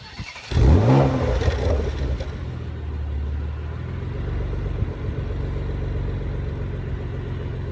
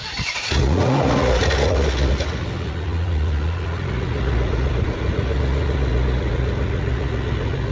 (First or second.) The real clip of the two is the first